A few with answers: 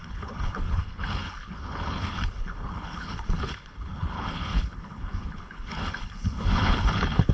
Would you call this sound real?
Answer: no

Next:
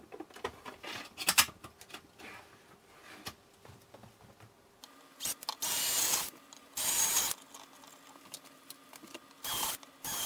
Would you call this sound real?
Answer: yes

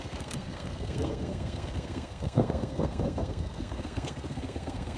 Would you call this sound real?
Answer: no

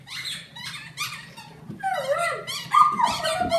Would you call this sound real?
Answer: yes